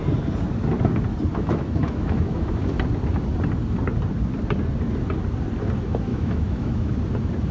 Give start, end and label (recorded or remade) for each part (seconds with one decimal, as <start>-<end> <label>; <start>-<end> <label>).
0.0-1.3 recorded; 1.3-2.6 remade; 2.6-6.1 recorded; 6.1-6.9 remade; 6.9-7.5 recorded